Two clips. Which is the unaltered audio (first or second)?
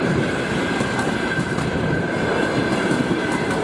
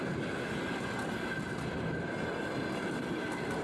second